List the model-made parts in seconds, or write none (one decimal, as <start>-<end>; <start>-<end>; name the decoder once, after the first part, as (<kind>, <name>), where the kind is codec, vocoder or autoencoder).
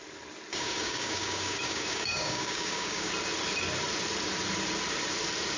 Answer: 0.5-3.1 (codec, DAC)